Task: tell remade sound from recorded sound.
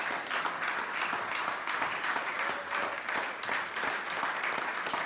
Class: recorded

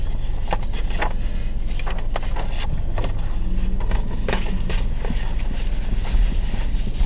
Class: recorded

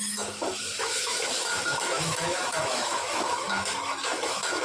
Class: remade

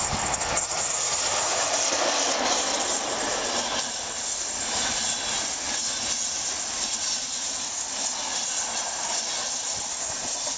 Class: recorded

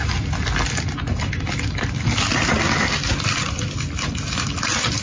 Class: recorded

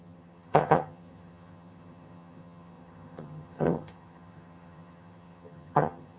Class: remade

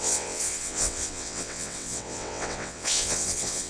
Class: remade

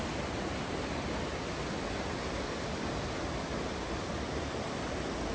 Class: recorded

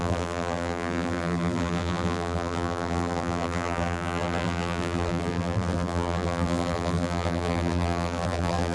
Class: remade